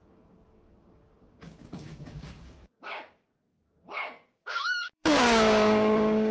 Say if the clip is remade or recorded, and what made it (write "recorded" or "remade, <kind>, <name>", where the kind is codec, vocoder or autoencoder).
remade, codec, DAC